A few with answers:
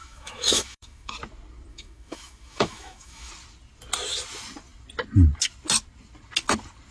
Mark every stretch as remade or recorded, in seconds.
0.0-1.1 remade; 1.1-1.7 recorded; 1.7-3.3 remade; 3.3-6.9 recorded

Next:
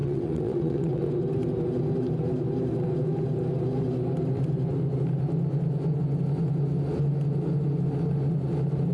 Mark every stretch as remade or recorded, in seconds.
0.0-1.1 remade; 1.1-8.9 recorded